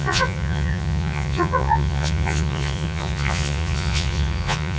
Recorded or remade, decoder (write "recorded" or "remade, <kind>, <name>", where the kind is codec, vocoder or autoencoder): remade, vocoder, Vocos